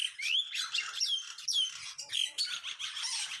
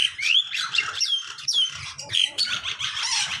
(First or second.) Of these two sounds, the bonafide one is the first